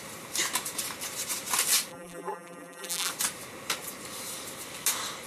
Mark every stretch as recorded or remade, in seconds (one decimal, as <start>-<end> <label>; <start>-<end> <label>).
0.0-1.9 recorded; 1.9-3.1 remade; 3.1-5.3 recorded